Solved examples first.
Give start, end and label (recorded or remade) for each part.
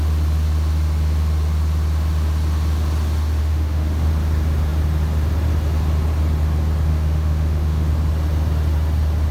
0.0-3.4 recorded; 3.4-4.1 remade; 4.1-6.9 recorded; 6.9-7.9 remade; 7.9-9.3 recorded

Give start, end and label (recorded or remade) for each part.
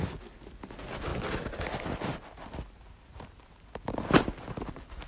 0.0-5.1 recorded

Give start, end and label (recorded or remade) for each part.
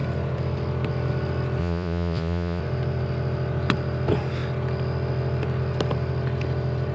0.0-1.6 recorded; 1.6-2.6 remade; 2.6-6.9 recorded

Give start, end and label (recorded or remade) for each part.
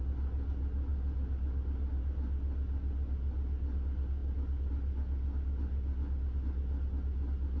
0.0-7.6 recorded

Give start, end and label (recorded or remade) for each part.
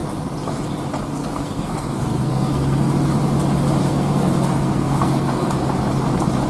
0.0-1.2 recorded; 1.2-2.9 remade; 2.9-3.8 recorded; 3.8-5.5 remade; 5.5-6.5 recorded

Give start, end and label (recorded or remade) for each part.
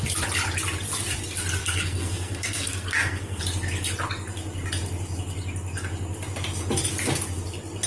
0.0-1.6 recorded; 1.6-3.4 remade; 3.4-7.9 recorded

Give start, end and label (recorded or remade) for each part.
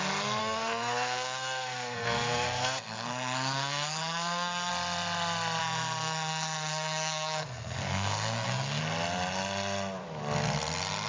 0.0-0.4 recorded; 0.4-4.7 remade; 4.7-5.6 recorded; 5.6-8.8 remade; 8.8-11.1 recorded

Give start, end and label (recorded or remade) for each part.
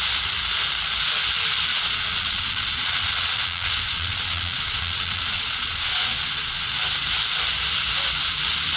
0.0-1.7 recorded; 1.7-6.7 remade; 6.7-8.8 recorded